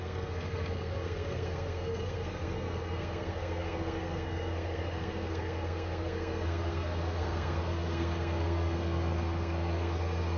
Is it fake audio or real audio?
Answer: fake